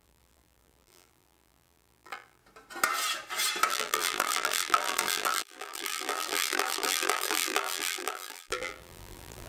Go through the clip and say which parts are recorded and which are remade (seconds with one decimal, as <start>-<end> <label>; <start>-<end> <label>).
0.0-2.4 remade; 2.4-3.7 recorded; 3.7-9.5 remade